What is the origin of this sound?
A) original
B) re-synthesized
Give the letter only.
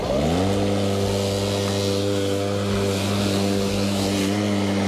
A